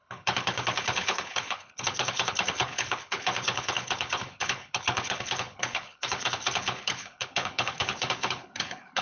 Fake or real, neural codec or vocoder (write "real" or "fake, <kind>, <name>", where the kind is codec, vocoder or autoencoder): fake, codec, HILCodec